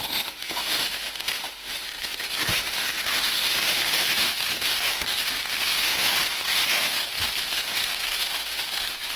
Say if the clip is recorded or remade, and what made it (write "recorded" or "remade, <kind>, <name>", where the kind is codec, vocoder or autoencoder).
remade, autoencoder, DAC-VAE